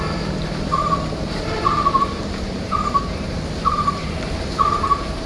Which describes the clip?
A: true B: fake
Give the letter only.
B